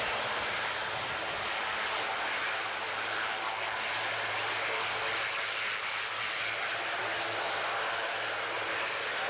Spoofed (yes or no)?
no